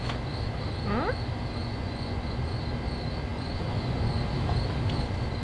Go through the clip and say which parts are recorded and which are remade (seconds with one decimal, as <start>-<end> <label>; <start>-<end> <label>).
0.0-1.6 recorded; 1.6-2.6 remade; 2.6-3.3 recorded; 3.3-4.2 remade; 4.2-5.4 recorded